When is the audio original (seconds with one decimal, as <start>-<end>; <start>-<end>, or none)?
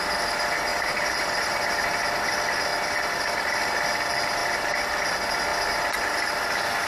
0.0-0.7; 2.0-6.9